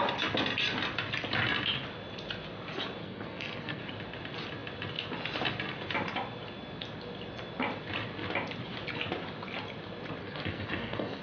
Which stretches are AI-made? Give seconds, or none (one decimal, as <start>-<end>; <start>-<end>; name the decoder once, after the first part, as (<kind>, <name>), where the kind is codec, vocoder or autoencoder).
3.0-3.8 (codec, SNAC); 10.2-11.2